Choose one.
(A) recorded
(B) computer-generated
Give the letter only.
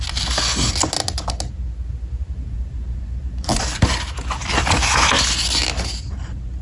A